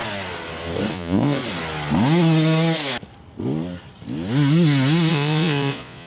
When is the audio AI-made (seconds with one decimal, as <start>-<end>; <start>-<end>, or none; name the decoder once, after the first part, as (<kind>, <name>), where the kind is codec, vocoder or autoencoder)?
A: 0.9-1.4 (vocoder, Vocos); 5.1-6.1

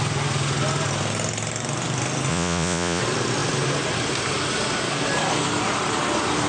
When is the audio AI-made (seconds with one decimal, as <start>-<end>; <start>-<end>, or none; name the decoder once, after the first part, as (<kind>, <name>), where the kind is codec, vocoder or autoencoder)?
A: 2.3-3.0 (vocoder, Vocos)

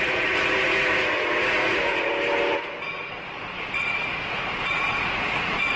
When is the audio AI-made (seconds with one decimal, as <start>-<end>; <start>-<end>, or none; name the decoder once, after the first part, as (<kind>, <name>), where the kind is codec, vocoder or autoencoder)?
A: 0.0-2.1 (vocoder, Vocos); 3.6-5.8

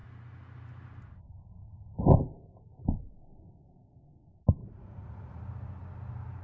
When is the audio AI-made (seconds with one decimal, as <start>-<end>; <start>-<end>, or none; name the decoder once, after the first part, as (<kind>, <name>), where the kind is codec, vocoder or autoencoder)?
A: 4.6-5.4 (vocoder, Vocos)

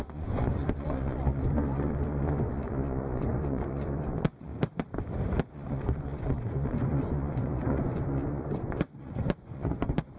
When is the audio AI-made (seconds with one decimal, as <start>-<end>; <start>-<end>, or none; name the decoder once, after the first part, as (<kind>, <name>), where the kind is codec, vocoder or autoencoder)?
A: 0.0-4.5 (vocoder, Vocos); 5.5-10.2

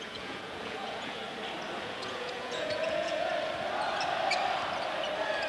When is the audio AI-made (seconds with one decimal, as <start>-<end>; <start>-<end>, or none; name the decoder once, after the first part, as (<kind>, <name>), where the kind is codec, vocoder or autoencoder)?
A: 0.0-1.2 (vocoder, Vocos); 1.8-3.3